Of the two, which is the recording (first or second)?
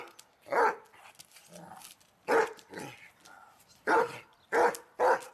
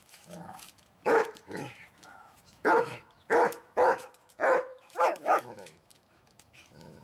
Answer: first